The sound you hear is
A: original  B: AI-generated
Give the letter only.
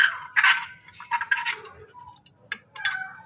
A